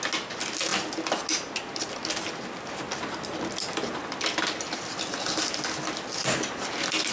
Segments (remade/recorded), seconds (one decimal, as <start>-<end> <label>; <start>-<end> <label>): 0.0-7.1 recorded